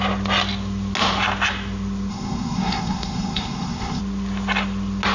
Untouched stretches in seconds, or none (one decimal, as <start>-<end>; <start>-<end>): 0.0-2.1; 4.0-5.1